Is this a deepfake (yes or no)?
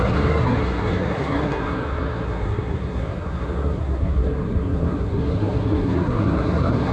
yes